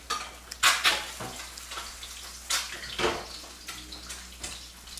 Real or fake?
real